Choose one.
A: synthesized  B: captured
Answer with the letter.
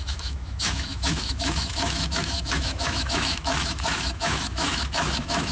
A